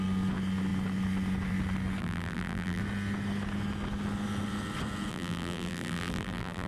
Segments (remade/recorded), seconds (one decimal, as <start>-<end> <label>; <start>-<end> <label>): 0.0-2.0 recorded; 2.0-2.8 remade; 2.8-5.1 recorded; 5.1-6.7 remade